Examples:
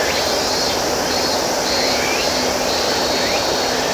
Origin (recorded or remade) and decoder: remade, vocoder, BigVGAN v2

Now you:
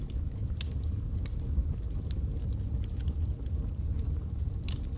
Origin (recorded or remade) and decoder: recorded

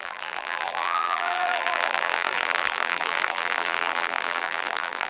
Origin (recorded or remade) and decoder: remade, vocoder, BigVGAN v2